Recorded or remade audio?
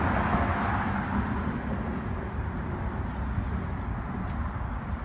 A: recorded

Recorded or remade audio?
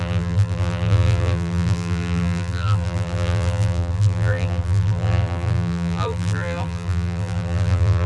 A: remade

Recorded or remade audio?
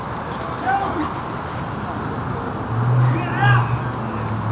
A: recorded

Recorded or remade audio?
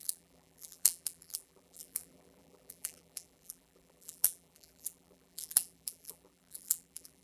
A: remade